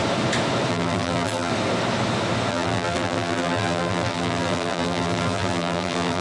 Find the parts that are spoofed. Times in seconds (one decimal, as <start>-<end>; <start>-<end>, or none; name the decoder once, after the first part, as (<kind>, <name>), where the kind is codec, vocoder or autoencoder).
0.7-1.5 (vocoder, BigVGAN v2); 2.5-6.2